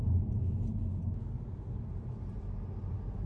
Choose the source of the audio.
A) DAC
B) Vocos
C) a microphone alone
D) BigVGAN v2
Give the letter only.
C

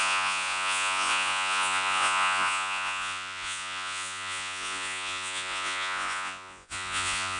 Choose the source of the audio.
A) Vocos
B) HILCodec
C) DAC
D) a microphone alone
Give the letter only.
A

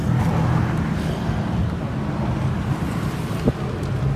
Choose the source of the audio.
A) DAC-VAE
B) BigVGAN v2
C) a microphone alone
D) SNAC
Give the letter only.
C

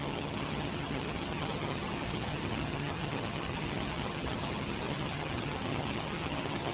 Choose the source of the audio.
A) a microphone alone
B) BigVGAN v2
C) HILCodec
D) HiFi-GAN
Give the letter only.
D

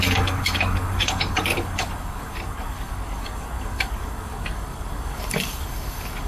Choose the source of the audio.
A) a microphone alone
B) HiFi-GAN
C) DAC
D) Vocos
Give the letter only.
C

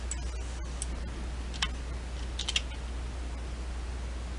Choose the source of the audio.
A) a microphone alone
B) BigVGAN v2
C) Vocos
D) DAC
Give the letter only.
A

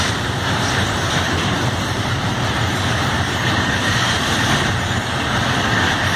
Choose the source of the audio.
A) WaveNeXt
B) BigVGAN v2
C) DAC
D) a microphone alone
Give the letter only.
B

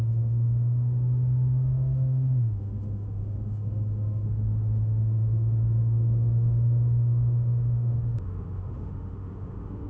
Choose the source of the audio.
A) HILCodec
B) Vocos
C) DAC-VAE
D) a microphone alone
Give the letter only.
C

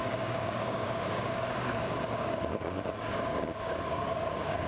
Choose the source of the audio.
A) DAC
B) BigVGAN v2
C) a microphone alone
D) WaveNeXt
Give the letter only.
A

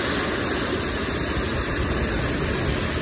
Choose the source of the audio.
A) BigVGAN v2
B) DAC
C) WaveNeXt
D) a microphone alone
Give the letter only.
D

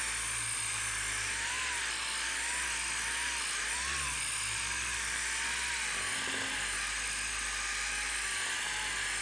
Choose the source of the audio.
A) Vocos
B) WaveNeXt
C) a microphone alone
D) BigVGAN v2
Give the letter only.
C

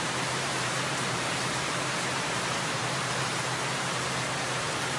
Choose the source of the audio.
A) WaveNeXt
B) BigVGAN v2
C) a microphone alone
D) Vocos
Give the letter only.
B